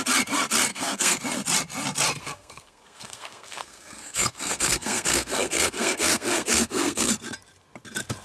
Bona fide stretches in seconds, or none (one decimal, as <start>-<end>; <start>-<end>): 0.0-0.7; 1.2-2.2; 7.1-8.2